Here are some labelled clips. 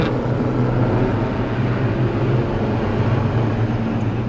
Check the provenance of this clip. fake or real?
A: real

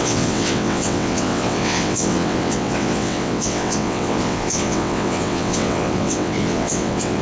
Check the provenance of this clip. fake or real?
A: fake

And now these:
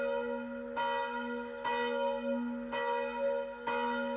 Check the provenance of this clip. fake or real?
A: real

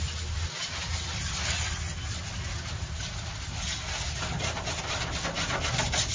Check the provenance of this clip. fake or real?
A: real